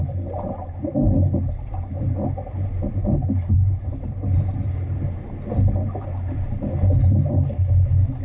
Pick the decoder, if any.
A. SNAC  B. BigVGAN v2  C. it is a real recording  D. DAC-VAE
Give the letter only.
C